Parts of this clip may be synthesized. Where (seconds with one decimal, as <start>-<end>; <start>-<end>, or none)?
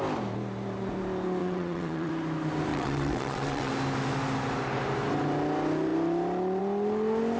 1.4-2.1; 2.7-3.7